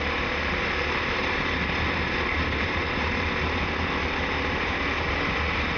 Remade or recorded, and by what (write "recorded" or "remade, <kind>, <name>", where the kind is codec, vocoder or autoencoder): recorded